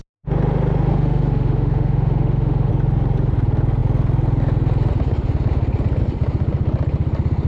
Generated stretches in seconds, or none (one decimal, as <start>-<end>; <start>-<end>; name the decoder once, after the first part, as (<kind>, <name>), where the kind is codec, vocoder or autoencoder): 0.9-2.7 (autoencoder, DAC-VAE)